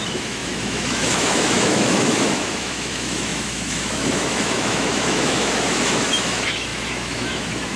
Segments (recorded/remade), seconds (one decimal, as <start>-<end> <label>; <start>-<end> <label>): 0.0-7.8 remade